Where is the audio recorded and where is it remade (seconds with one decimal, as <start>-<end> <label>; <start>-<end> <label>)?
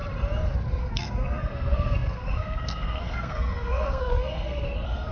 0.0-0.8 recorded; 0.8-5.1 remade